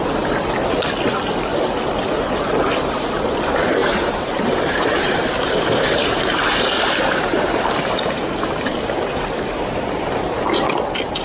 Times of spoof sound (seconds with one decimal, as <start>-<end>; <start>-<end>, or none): 3.8-7.6